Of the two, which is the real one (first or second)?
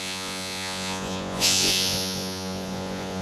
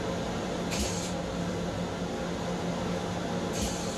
second